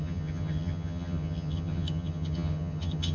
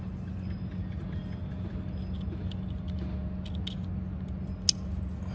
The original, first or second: second